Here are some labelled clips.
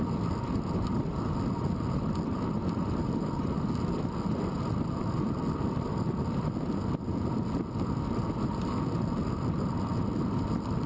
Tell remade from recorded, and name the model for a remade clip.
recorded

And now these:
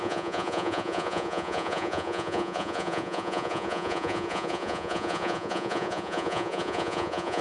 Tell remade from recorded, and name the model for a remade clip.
remade, vocoder, Vocos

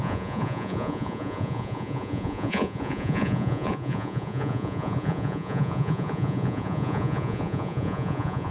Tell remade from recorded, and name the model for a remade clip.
remade, vocoder, Vocos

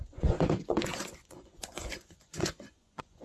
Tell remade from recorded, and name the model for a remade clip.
remade, vocoder, Vocos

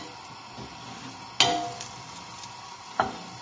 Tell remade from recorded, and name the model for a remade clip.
recorded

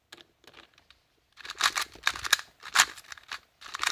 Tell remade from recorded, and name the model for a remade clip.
recorded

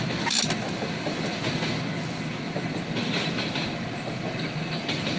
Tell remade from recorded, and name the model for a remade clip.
recorded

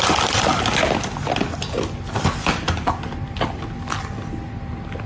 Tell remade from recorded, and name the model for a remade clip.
recorded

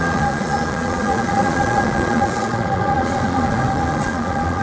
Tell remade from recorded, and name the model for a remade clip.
remade, vocoder, Vocos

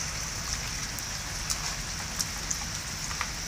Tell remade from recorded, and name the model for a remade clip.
recorded